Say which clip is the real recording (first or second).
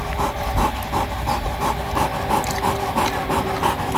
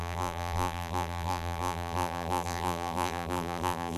first